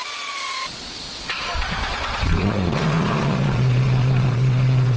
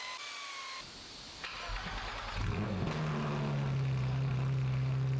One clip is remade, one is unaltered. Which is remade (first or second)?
first